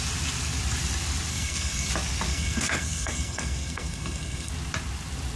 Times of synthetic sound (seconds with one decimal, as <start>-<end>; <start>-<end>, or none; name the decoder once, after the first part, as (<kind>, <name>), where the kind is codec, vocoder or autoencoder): 1.3-1.9 (codec, SNAC); 2.3-4.5